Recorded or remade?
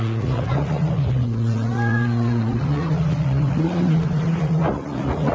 remade